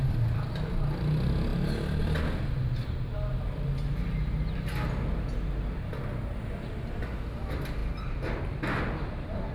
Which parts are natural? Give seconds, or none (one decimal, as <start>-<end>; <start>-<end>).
0.0-9.5